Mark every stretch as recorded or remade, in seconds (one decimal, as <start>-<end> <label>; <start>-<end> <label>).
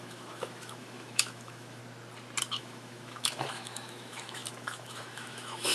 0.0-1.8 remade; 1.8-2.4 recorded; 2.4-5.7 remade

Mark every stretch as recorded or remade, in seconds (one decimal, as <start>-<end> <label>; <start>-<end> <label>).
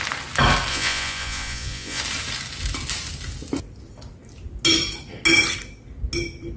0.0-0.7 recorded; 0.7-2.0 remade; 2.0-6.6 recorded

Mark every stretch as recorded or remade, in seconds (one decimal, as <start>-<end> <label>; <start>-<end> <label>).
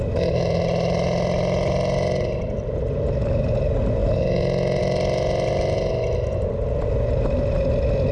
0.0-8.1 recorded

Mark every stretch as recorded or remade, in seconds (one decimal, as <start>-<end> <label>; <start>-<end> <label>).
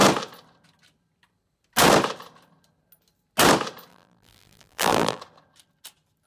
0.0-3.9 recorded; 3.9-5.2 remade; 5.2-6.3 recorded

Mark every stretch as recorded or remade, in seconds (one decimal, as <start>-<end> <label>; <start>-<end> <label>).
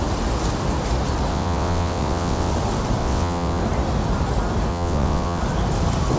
0.0-1.3 recorded; 1.3-2.5 remade; 2.5-3.0 recorded; 3.0-3.6 remade; 3.6-4.7 recorded; 4.7-5.4 remade; 5.4-6.2 recorded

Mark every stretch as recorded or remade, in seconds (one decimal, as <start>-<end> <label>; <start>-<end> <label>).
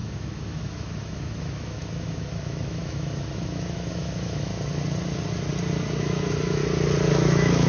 0.0-4.5 remade; 4.5-6.0 recorded; 6.0-6.6 remade; 6.6-7.1 recorded; 7.1-7.7 remade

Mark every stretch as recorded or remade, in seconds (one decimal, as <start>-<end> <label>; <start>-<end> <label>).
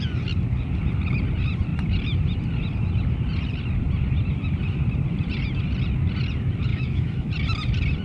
0.0-6.7 recorded; 6.7-7.3 remade; 7.3-8.0 recorded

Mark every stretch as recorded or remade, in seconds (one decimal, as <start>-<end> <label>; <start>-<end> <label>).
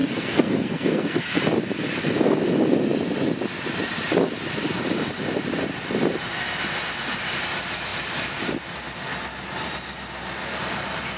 0.0-1.4 remade; 1.4-11.2 recorded